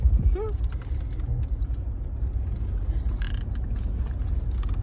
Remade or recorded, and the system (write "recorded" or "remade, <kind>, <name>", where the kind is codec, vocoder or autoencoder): recorded